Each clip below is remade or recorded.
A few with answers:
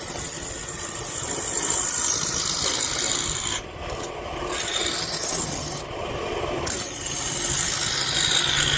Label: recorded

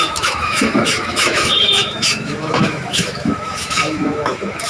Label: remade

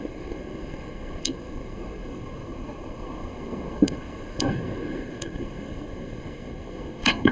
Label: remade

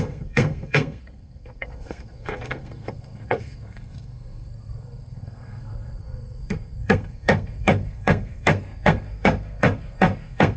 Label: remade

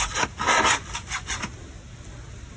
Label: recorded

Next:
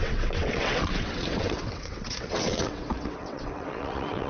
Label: remade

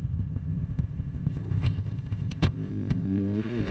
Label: remade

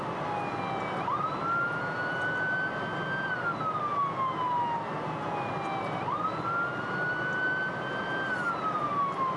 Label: recorded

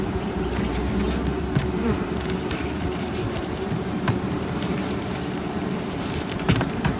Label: remade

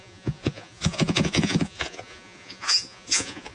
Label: remade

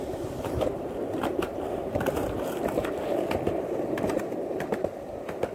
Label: remade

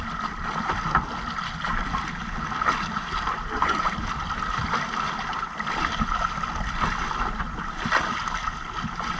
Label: recorded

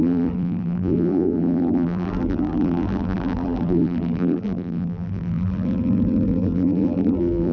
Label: remade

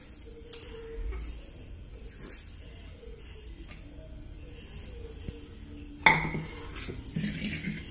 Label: recorded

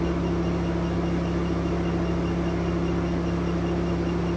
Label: recorded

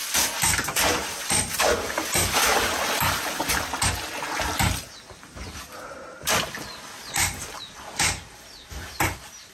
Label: recorded